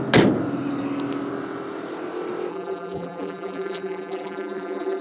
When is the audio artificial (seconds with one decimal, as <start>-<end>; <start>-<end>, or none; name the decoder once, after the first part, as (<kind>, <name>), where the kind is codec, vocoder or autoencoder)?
2.5-5.0 (vocoder, BigVGAN v2)